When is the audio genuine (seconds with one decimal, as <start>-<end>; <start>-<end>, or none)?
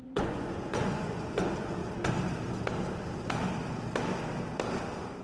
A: 1.8-5.2